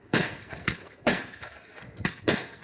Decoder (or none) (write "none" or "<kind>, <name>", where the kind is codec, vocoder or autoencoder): codec, SNAC